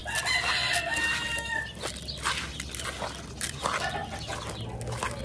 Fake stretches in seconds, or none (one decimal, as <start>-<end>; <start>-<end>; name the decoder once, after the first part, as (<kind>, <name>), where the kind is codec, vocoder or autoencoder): none